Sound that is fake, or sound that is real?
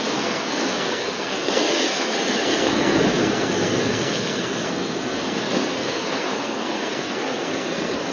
fake